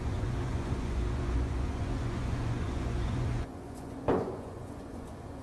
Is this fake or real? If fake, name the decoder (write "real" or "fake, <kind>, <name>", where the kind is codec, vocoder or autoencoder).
fake, vocoder, Vocos